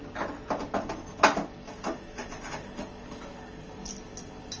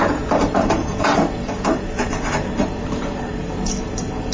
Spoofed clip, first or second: second